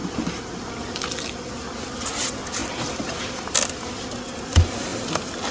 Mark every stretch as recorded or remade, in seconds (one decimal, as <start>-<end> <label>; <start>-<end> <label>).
0.0-2.6 recorded; 2.6-3.8 remade; 3.8-5.5 recorded